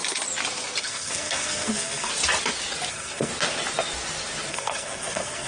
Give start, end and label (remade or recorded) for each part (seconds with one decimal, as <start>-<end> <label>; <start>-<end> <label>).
0.0-0.8 recorded; 0.8-2.1 remade; 2.1-2.9 recorded; 2.9-3.3 remade; 3.3-4.5 recorded; 4.5-5.5 remade